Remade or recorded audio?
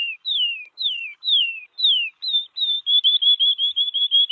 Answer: recorded